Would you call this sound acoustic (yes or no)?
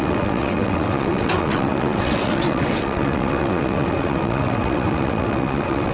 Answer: no